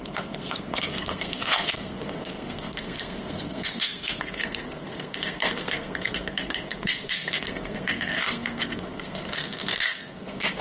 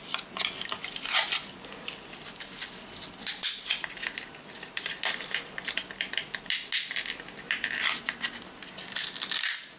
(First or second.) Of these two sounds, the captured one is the second